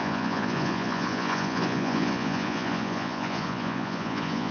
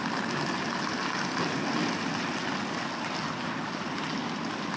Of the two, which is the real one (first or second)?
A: second